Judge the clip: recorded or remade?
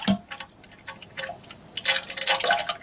recorded